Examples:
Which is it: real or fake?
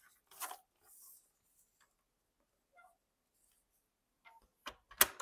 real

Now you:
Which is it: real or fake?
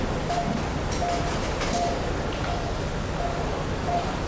real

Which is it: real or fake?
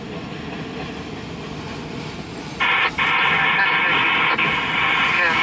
real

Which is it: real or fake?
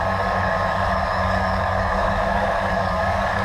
fake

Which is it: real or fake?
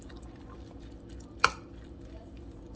fake